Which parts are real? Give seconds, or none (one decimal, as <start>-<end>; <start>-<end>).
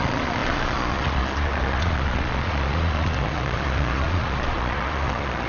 none